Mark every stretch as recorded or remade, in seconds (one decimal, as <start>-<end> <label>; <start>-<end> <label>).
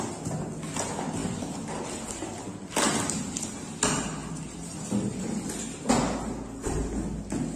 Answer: 0.0-7.6 recorded